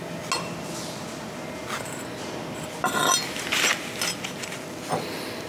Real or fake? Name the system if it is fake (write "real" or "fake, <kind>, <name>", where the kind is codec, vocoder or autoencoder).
real